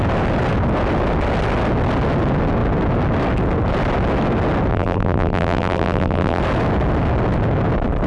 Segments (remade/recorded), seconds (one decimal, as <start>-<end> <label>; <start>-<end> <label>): 0.0-4.7 recorded; 4.7-6.4 remade; 6.4-8.1 recorded